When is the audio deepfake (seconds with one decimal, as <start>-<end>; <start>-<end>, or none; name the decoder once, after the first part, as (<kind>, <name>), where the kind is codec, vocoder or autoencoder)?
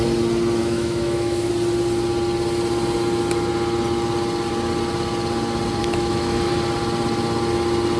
0.6-1.5 (autoencoder, DAC-VAE); 5.8-6.5